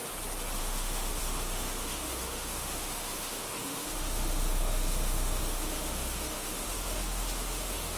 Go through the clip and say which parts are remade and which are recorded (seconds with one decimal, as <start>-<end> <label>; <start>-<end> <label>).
0.0-0.6 recorded; 0.6-8.0 remade